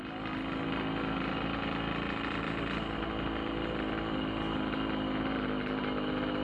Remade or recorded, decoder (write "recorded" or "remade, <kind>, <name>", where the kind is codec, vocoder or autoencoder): recorded